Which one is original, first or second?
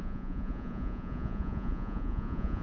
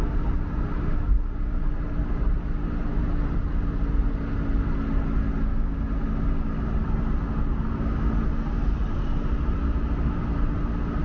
second